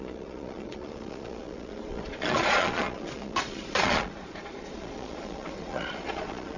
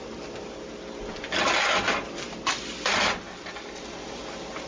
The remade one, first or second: first